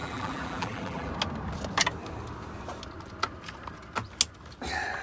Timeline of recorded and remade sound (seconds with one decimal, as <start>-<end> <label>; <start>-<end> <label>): 0.0-1.1 remade; 1.1-5.0 recorded